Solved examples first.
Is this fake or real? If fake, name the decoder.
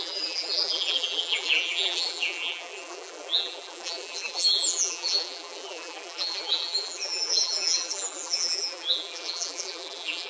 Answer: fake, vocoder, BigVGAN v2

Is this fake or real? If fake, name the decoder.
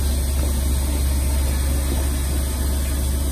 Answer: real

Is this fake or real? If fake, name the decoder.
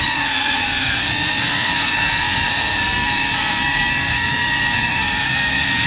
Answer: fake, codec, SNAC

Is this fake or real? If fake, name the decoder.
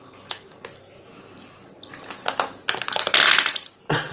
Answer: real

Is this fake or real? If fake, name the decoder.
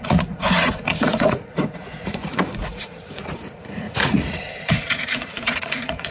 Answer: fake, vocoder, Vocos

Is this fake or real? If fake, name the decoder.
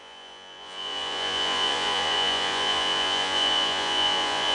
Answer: fake, vocoder, Vocos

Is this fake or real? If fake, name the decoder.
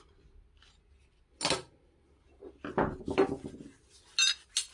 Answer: real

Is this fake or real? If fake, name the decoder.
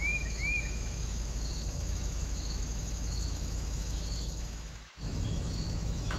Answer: fake, autoencoder, DAC-VAE